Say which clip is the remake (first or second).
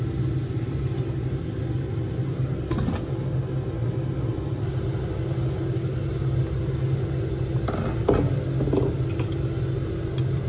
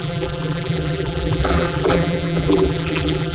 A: second